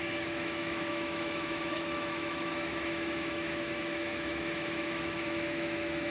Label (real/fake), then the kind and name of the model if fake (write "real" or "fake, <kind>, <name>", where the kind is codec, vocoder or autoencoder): fake, autoencoder, DAC-VAE